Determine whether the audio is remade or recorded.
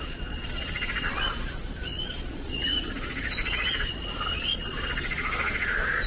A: remade